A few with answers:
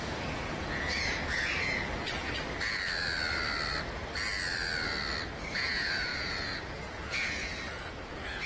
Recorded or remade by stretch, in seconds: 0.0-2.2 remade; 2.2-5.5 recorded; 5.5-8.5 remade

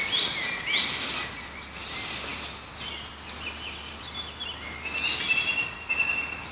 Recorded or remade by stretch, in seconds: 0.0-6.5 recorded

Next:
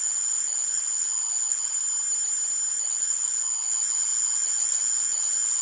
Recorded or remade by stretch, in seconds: 0.0-1.8 remade; 1.8-2.7 recorded; 2.7-5.6 remade

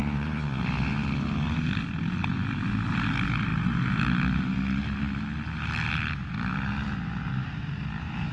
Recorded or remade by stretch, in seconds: 0.0-0.6 remade; 0.6-8.3 recorded

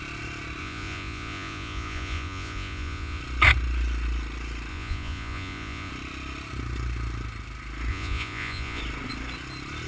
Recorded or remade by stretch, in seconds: 0.0-0.6 recorded; 0.6-3.2 remade; 3.2-4.7 recorded; 4.7-5.9 remade; 5.9-7.9 recorded; 7.9-8.8 remade; 8.8-9.9 recorded

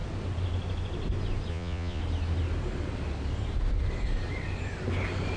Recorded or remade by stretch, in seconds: 0.0-1.5 recorded; 1.5-2.0 remade; 2.0-5.4 recorded

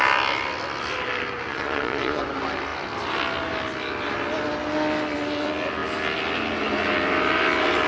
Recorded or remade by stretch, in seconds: 0.0-1.5 recorded; 1.5-2.2 remade; 2.2-7.9 recorded

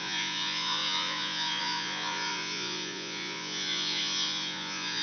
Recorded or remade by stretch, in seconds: 0.0-5.0 remade